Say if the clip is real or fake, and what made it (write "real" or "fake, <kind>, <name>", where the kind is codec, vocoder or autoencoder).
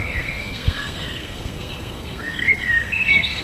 fake, codec, SNAC